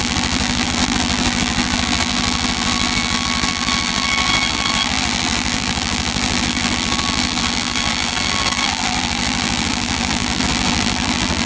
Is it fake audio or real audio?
fake